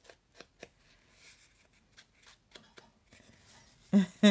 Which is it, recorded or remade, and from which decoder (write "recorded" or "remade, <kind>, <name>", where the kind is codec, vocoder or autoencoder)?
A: recorded